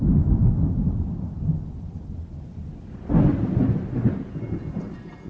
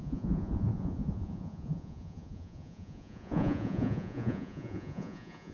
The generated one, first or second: second